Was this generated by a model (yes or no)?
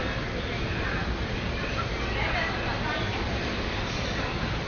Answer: no